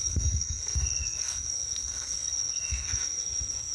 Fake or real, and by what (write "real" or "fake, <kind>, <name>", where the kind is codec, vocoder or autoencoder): fake, codec, SNAC